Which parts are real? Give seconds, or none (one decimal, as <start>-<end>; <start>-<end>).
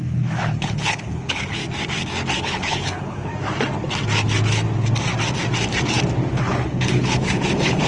1.6-2.4; 3.3-6.3